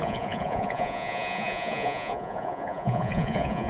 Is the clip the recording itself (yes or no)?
no